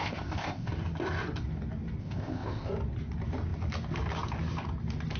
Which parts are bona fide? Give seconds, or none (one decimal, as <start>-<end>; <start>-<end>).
0.7-2.0; 2.7-5.2